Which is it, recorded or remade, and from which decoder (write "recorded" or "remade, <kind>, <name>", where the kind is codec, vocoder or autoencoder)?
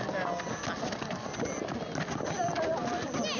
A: recorded